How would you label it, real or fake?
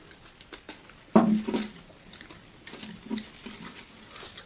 real